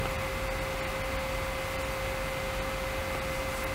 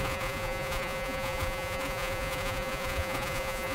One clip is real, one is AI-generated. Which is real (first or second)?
first